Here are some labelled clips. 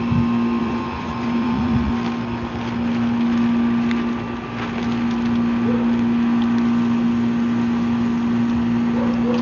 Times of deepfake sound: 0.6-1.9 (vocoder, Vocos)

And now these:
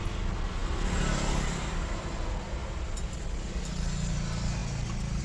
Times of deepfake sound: none